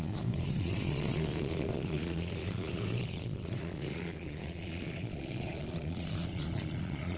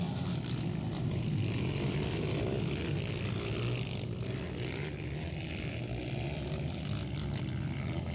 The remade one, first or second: first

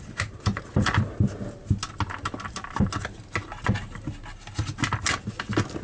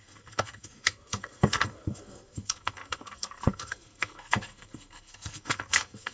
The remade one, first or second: second